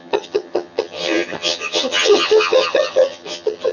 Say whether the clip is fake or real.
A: fake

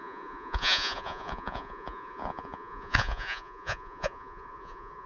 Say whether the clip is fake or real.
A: fake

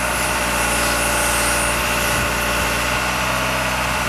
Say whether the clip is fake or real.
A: real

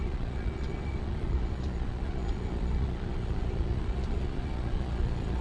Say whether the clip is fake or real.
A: fake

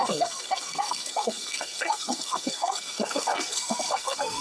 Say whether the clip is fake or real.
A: fake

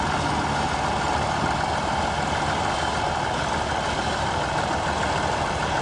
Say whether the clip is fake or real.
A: real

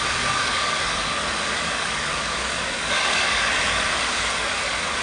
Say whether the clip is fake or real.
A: fake